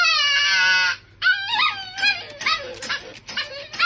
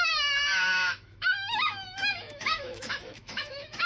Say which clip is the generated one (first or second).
second